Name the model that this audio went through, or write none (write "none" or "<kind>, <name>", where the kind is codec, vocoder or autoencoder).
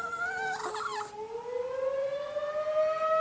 none